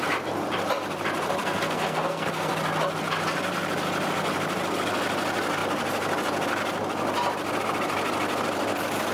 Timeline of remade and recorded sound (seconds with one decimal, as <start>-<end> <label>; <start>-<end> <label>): 0.0-1.4 recorded; 1.4-2.5 remade; 2.5-9.1 recorded

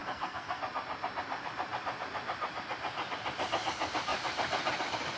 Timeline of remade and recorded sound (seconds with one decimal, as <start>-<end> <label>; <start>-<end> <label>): 0.0-0.6 remade; 0.6-5.2 recorded

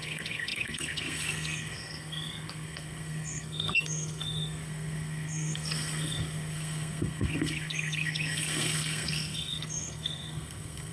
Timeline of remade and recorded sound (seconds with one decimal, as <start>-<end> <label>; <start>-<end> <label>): 0.0-10.9 remade

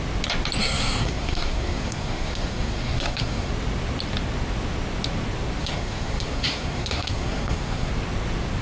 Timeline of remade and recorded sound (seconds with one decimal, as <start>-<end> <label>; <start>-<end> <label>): 0.0-0.6 recorded; 0.6-3.5 remade; 3.5-5.6 recorded; 5.6-7.9 remade; 7.9-8.6 recorded

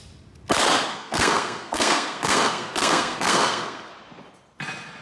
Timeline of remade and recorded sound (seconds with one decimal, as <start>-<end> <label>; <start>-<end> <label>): 0.0-0.9 recorded; 0.9-3.9 remade; 3.9-5.0 recorded